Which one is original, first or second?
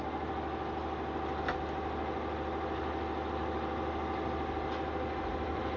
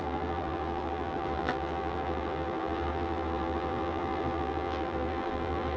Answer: first